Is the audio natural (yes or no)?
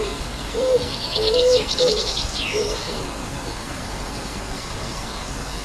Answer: no